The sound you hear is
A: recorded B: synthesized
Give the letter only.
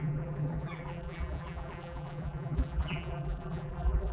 B